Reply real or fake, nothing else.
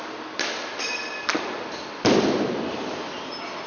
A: real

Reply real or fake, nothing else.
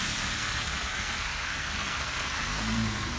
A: fake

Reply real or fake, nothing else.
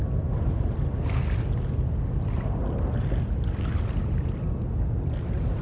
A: real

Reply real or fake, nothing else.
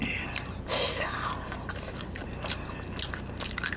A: real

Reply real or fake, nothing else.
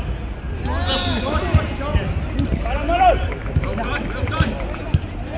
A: real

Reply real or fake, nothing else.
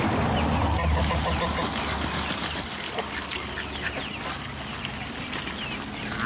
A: real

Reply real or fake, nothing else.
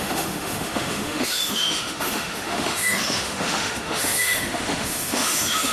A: fake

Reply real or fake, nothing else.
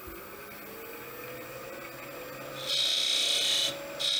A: real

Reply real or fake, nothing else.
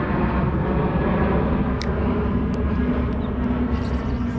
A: real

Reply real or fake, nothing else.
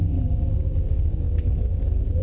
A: fake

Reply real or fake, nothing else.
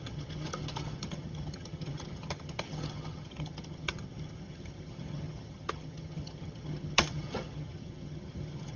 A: fake